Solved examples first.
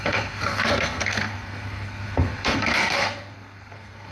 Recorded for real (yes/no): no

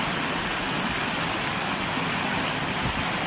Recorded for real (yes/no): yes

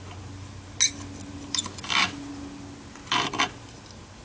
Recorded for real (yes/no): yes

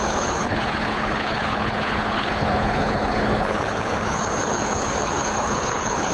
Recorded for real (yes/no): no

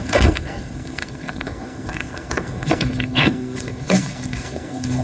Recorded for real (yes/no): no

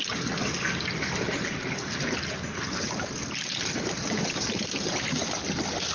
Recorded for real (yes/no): yes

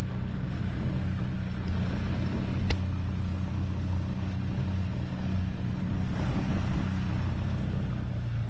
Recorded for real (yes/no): yes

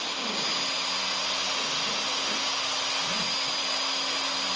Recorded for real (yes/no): yes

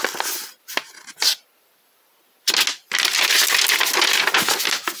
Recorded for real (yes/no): yes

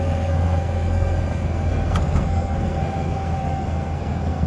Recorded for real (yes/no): no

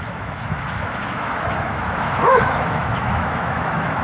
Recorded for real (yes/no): no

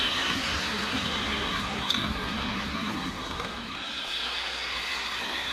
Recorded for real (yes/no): no